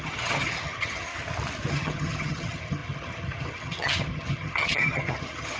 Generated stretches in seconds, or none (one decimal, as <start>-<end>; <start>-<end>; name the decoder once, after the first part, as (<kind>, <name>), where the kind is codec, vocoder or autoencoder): 0.0-1.1 (vocoder, HiFi-GAN); 1.7-5.6

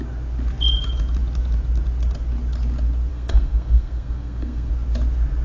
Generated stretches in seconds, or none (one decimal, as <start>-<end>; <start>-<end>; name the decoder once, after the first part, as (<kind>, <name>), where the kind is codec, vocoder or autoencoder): 3.1-4.7 (codec, SNAC)

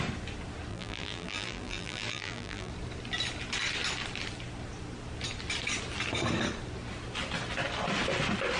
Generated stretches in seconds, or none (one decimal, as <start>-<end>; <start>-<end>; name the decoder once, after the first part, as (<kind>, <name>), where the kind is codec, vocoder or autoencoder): 0.7-2.7 (vocoder, BigVGAN v2)

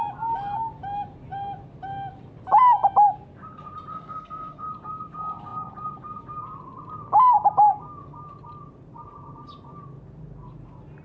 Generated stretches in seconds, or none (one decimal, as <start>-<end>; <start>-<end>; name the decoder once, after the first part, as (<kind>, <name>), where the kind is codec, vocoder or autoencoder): 3.9-4.7 (codec, SNAC)

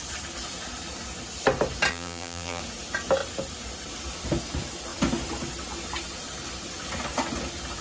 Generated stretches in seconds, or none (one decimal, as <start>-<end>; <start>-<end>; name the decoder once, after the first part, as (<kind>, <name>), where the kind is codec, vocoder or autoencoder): 1.9-2.6 (vocoder, BigVGAN v2)